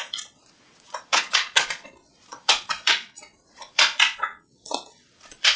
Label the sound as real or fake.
fake